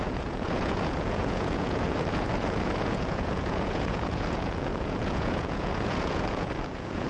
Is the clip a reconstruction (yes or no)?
yes